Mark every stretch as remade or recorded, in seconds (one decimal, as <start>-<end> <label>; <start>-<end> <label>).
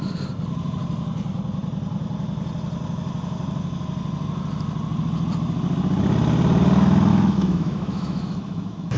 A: 0.0-7.1 recorded; 7.1-9.0 remade